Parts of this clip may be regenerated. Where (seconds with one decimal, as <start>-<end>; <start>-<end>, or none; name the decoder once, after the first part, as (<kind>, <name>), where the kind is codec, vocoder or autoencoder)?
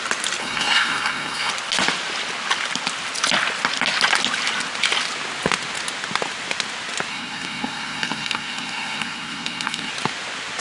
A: 0.4-1.5 (codec, SNAC); 7.1-9.9